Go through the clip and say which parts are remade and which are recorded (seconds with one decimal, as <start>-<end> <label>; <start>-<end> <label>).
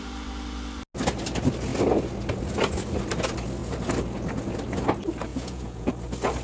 0.0-5.3 recorded; 5.3-5.9 remade; 5.9-6.4 recorded